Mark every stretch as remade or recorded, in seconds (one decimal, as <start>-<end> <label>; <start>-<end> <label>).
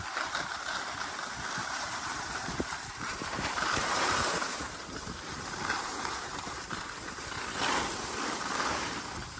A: 0.0-1.6 recorded; 1.6-2.5 remade; 2.5-3.1 recorded; 3.1-6.8 remade; 6.8-9.4 recorded